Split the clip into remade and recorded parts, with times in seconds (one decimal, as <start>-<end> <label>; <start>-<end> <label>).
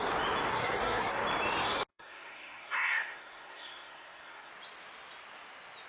0.0-0.5 recorded; 0.5-1.1 remade; 1.1-1.9 recorded; 1.9-4.5 remade; 4.5-5.9 recorded